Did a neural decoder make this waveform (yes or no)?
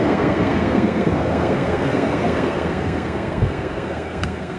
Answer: yes